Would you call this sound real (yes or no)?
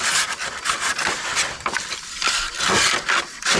yes